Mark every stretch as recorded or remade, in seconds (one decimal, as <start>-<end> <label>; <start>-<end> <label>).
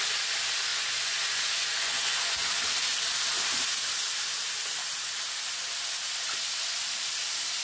0.0-0.7 recorded; 0.7-2.5 remade; 2.5-7.6 recorded